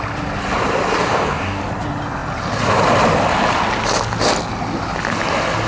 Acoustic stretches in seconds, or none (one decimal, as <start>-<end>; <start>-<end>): 0.0-1.0; 1.6-5.7